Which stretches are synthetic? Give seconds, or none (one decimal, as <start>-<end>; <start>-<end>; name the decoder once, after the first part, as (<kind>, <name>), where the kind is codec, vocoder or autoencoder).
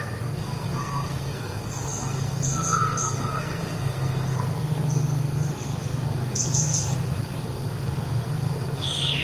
0.0-9.2 (codec, SNAC)